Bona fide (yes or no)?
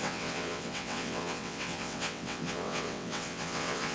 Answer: no